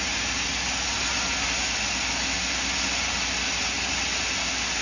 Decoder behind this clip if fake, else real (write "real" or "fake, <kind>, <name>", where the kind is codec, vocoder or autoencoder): real